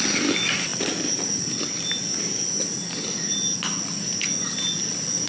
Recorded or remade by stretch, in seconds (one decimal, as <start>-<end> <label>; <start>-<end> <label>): 0.0-5.3 recorded